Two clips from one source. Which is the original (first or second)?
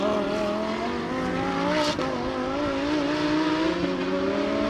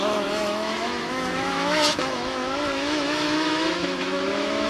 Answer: first